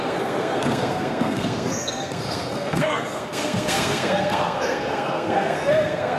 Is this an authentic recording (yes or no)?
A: no